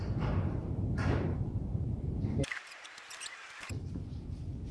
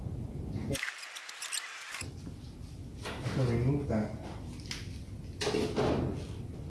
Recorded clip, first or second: second